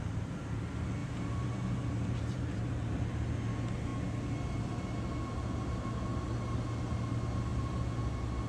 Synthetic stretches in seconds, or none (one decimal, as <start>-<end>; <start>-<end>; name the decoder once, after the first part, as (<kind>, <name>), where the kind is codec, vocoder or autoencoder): 1.0-3.0 (vocoder, BigVGAN v2); 7.5-8.0